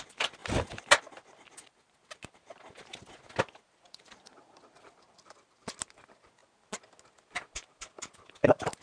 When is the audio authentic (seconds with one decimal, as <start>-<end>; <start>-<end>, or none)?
0.0-8.8